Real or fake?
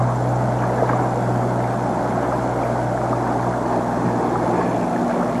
real